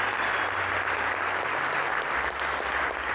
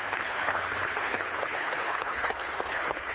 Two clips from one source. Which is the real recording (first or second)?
first